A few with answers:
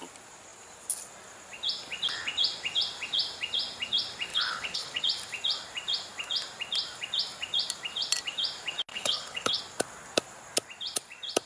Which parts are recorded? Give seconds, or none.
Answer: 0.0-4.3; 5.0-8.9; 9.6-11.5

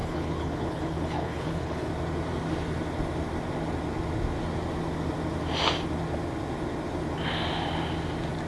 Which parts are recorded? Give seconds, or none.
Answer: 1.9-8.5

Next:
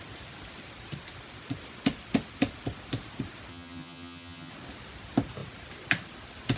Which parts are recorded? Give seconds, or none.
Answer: 0.0-3.5; 4.5-6.6